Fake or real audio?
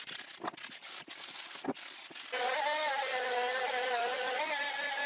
real